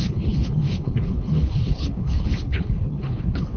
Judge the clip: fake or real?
fake